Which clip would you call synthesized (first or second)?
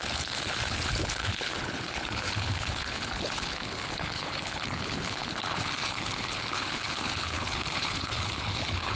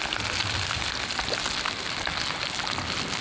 first